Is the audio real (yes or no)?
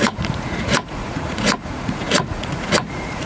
no